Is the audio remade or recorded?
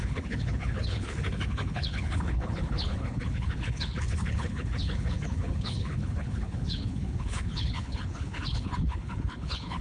remade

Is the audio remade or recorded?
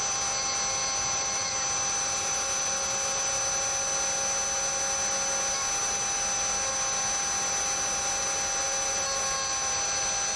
recorded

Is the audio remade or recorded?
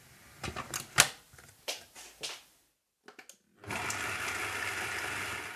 recorded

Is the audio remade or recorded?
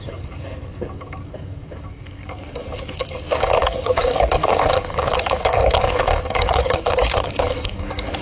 remade